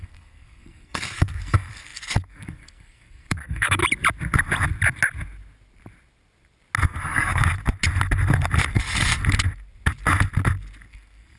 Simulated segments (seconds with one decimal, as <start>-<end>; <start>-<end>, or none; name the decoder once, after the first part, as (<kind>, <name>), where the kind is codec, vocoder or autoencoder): 0.0-3.8 (codec, SNAC); 6.8-7.4; 8.7-9.2; 10.9-11.4